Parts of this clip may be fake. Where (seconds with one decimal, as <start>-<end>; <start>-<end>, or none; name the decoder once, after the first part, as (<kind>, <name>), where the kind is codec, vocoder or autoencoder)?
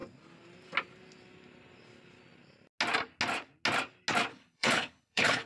4.3-5.5 (codec, HILCodec)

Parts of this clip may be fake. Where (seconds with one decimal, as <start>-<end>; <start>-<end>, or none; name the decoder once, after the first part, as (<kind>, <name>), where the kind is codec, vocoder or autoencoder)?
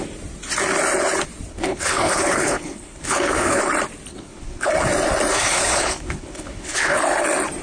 1.5-3.6 (codec, HILCodec); 4.1-4.7; 5.3-7.0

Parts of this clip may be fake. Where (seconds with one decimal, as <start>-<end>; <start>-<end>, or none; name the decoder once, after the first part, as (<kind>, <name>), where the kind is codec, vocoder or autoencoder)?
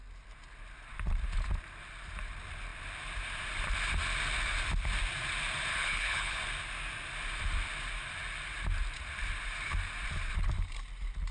5.7-6.4 (codec, HILCodec)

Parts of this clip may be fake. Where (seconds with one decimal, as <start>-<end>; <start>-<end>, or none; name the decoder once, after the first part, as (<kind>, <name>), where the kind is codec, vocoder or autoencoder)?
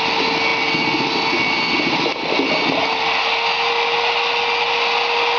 none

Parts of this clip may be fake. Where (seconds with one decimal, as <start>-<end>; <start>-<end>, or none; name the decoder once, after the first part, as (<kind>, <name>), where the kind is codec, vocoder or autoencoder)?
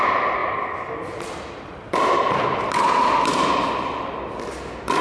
none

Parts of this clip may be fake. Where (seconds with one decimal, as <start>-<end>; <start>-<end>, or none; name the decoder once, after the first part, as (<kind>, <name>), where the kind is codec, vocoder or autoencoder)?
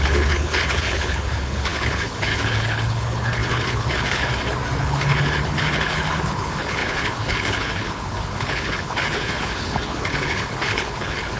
0.0-4.3 (codec, HILCodec); 4.8-11.4